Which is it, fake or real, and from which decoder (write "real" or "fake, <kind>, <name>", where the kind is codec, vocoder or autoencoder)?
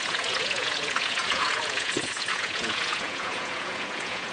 fake, vocoder, Vocos